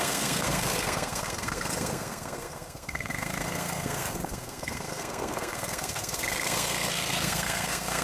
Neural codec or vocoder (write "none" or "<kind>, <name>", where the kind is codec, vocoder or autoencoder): codec, SNAC